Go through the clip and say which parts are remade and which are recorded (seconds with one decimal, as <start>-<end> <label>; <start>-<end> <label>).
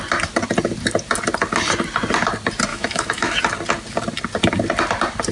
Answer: 0.0-2.7 recorded; 2.7-3.4 remade; 3.4-5.3 recorded